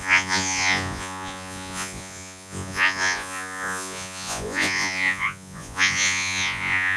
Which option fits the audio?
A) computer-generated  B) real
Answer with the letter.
A